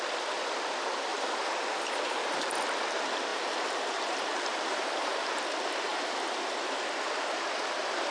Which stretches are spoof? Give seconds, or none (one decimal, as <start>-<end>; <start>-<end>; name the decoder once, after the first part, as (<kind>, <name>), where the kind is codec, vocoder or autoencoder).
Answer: 1.1-2.5 (vocoder, BigVGAN v2); 3.3-5.3; 5.9-6.6